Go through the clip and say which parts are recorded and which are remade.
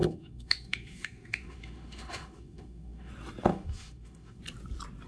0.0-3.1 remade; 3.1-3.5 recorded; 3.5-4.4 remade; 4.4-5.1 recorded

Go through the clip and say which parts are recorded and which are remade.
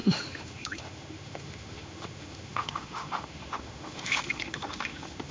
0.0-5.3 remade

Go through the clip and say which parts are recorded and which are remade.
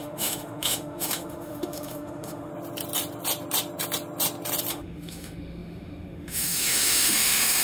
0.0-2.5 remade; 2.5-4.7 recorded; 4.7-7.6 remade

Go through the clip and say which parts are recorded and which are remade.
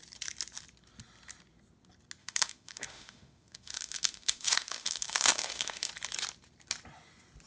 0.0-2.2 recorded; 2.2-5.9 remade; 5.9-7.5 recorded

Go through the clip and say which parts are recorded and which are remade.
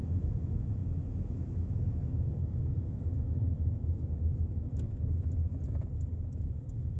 0.0-5.6 remade; 5.6-6.3 recorded; 6.3-7.0 remade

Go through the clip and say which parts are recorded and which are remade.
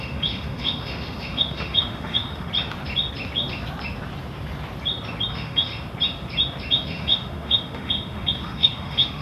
0.0-2.5 remade; 2.5-5.3 recorded; 5.3-5.7 remade; 5.7-6.7 recorded; 6.7-9.2 remade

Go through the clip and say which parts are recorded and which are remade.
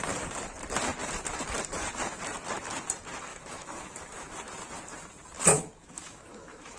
0.0-3.3 recorded; 3.3-4.3 remade; 4.3-5.5 recorded; 5.5-6.8 remade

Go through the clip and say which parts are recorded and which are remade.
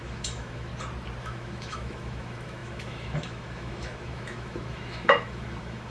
0.0-0.7 remade; 0.7-1.2 recorded; 1.2-5.9 remade